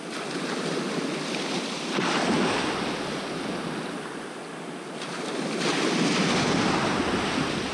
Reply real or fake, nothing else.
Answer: real